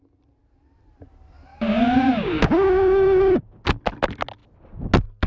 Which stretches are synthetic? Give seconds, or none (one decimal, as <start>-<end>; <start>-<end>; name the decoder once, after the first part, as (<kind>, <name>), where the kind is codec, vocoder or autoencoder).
1.5-3.4 (codec, DAC)